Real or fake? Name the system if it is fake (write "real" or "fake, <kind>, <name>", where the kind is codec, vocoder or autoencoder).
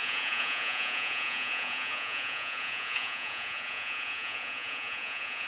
fake, vocoder, Vocos